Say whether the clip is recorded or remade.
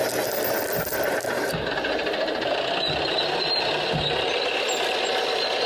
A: recorded